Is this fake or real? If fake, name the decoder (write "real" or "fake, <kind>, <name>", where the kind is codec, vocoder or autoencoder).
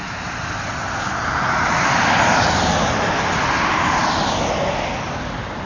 real